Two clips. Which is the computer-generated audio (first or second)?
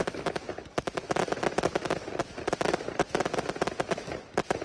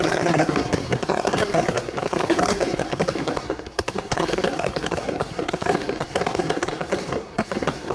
second